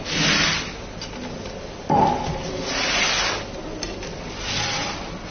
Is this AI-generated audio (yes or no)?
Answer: no